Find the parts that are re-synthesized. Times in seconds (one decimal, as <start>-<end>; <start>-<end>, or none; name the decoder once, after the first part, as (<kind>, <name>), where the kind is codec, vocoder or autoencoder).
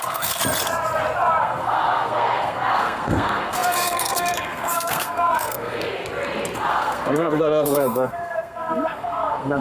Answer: 0.0-0.4 (codec, SNAC); 1.4-6.0; 6.7-9.6